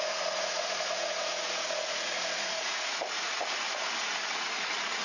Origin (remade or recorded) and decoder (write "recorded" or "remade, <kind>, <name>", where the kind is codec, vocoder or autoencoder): remade, vocoder, Vocos